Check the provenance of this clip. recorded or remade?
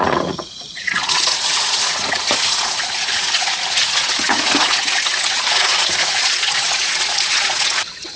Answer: remade